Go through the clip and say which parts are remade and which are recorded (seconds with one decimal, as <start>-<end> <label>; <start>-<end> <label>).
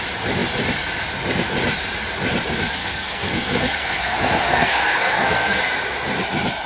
0.0-2.8 recorded; 2.8-5.6 remade; 5.6-6.7 recorded